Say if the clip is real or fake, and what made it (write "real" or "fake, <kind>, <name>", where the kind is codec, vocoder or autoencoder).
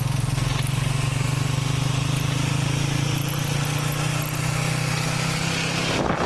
real